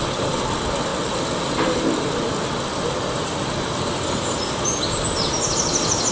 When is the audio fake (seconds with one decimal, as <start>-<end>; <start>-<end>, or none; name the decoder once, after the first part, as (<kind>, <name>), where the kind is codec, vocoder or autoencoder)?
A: 2.7-5.4 (vocoder, BigVGAN v2)